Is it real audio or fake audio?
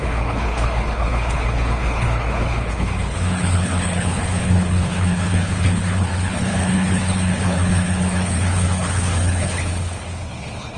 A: fake